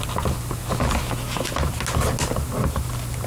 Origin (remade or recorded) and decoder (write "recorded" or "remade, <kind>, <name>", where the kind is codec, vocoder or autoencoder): recorded